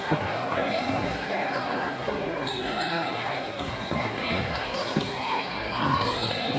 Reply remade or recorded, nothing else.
remade